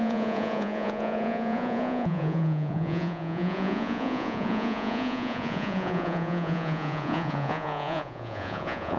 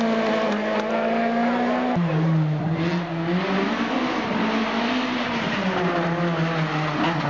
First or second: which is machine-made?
first